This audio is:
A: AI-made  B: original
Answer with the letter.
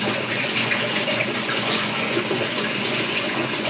A